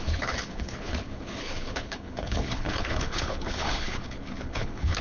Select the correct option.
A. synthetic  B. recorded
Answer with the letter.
A